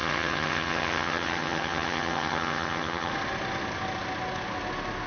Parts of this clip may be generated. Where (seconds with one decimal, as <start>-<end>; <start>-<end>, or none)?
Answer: 0.0-3.1